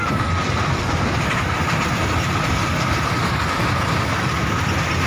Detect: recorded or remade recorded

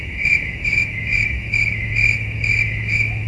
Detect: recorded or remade remade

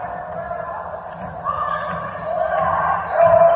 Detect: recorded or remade recorded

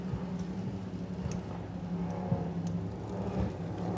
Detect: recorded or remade recorded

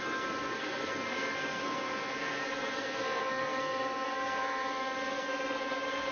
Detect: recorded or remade remade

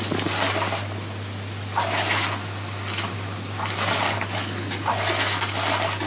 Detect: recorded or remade recorded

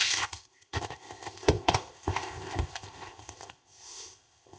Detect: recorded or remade remade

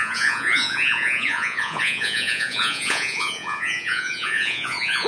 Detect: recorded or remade remade